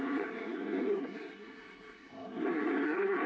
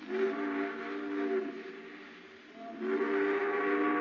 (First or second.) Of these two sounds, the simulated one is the first